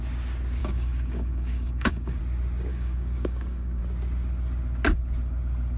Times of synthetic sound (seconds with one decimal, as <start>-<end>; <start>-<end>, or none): 0.6-2.2; 2.7-3.8